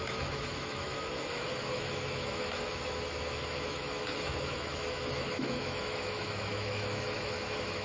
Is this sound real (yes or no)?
no